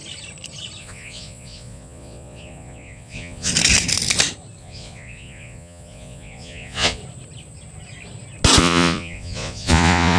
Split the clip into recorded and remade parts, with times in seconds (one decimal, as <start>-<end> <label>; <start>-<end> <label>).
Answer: 0.0-0.8 recorded; 0.8-3.5 remade; 3.5-4.6 recorded; 4.6-7.0 remade; 7.0-8.6 recorded; 8.6-10.2 remade